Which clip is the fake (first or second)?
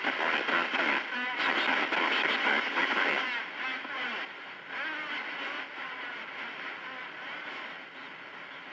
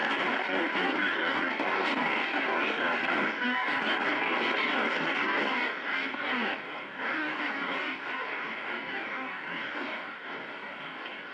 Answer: second